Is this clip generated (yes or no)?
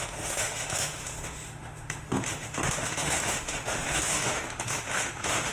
yes